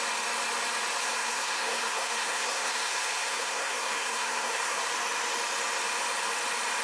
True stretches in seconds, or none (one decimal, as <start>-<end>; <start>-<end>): 0.0-1.0; 4.9-6.8